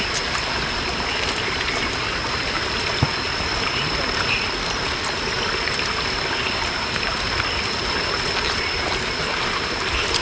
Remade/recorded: recorded